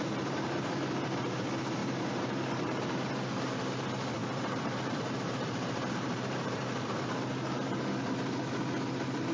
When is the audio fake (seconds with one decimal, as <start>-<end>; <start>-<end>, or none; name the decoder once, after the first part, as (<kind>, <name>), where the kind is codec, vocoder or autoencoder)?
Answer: 1.8-2.8 (vocoder, BigVGAN v2); 4.2-7.0

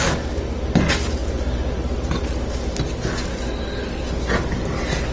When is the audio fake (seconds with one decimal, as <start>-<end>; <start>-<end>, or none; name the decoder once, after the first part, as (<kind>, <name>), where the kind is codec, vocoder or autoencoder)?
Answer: none